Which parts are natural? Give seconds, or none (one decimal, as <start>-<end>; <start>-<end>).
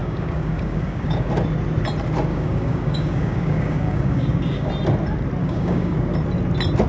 1.3-2.3; 4.7-5.4; 6.1-6.9